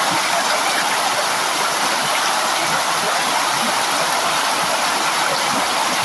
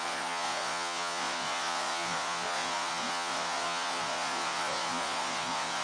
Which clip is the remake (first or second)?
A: second